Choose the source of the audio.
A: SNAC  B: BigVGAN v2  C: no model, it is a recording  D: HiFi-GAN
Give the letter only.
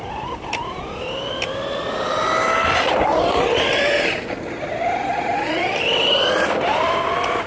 C